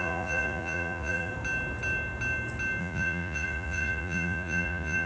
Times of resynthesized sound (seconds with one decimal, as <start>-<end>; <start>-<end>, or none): 0.0-1.3; 2.8-5.1

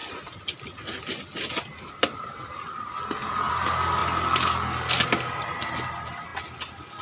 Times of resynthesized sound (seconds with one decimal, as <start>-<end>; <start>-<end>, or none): none

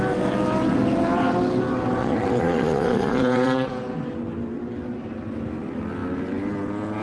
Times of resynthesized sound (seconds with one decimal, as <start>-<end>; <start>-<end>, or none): 2.0-3.7